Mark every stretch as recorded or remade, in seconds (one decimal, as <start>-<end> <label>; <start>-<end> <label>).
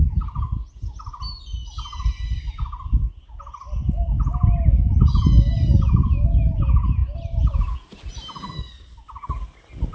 0.0-9.9 recorded